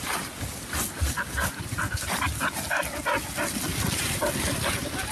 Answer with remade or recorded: recorded